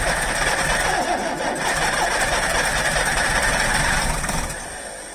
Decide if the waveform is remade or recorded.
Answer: recorded